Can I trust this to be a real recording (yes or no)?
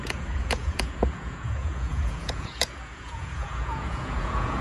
no